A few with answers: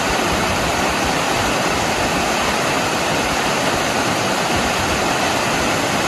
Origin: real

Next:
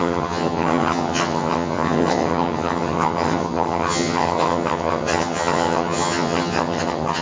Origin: fake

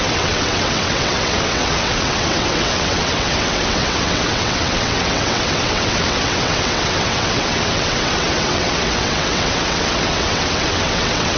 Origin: fake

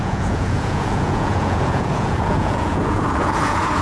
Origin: fake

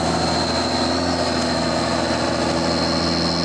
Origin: real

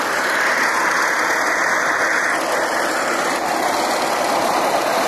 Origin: real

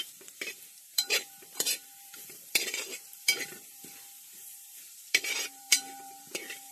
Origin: fake